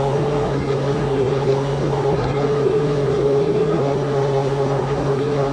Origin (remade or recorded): remade